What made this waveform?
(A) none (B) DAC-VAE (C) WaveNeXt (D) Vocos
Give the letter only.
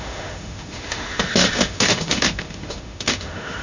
B